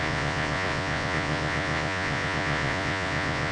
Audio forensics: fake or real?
fake